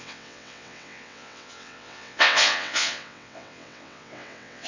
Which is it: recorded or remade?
remade